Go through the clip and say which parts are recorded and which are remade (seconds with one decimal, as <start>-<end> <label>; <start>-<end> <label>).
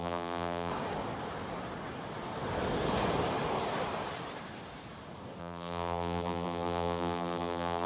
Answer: 0.0-0.7 remade; 0.7-5.4 recorded; 5.4-7.9 remade